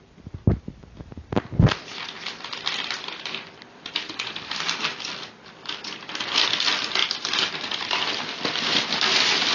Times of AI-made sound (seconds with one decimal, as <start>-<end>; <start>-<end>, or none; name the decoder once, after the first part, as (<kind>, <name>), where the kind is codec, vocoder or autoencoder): none